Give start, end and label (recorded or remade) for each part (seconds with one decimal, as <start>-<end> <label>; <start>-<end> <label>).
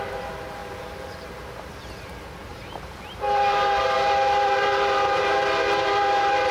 0.0-0.6 recorded; 0.6-1.7 remade; 1.7-2.5 recorded; 2.5-6.5 remade